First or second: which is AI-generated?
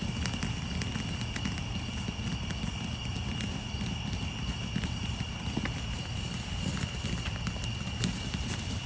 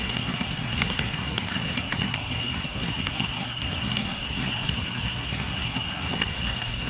second